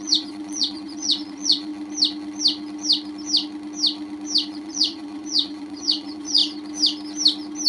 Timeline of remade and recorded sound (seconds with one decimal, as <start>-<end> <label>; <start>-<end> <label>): 0.0-1.7 remade; 1.7-4.5 recorded; 4.5-6.4 remade; 6.4-7.7 recorded